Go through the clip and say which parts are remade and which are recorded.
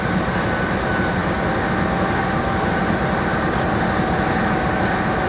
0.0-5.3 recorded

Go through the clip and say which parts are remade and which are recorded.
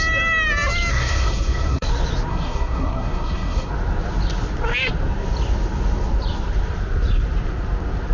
0.0-0.9 recorded; 0.9-1.9 remade; 1.9-2.3 recorded; 2.3-3.7 remade; 3.7-8.1 recorded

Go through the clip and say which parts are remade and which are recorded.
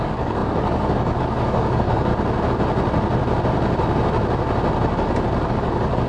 0.0-2.1 remade; 2.1-5.5 recorded; 5.5-6.1 remade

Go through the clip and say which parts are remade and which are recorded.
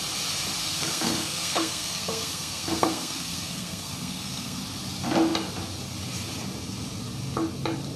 0.0-0.6 recorded; 0.6-4.6 remade; 4.6-8.0 recorded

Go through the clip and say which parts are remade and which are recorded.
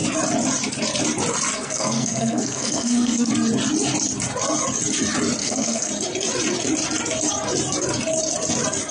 0.0-1.5 recorded; 1.5-3.3 remade; 3.3-5.4 recorded; 5.4-5.9 remade; 5.9-8.9 recorded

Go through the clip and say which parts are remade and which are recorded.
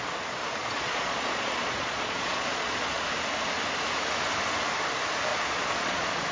0.0-0.6 recorded; 0.6-3.0 remade; 3.0-5.3 recorded; 5.3-6.3 remade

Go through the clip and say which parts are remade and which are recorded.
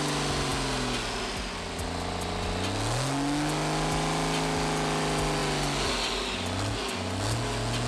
0.0-7.9 recorded